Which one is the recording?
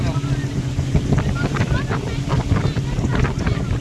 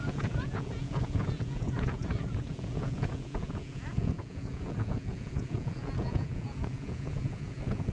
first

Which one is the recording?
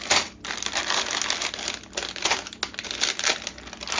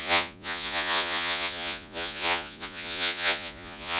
first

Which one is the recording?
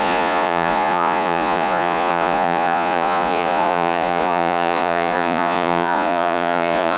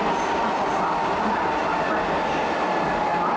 second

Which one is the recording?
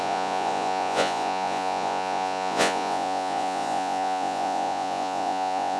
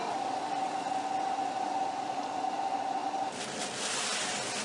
second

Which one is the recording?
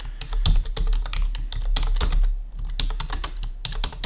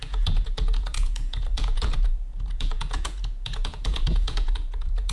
first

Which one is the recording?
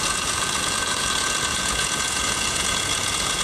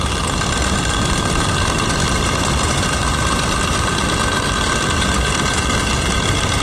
second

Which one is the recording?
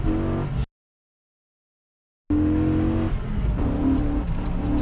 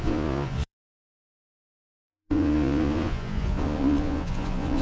first